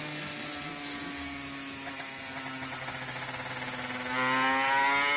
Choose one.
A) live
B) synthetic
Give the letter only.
A